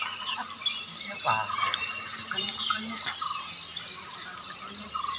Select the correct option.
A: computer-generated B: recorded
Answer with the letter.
B